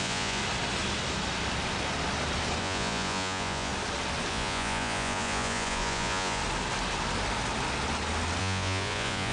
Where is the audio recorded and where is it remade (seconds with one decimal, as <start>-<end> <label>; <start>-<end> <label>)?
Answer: 0.0-0.4 remade; 0.4-2.6 recorded; 2.6-3.7 remade; 3.7-4.3 recorded; 4.3-6.4 remade; 6.4-8.4 recorded; 8.4-9.3 remade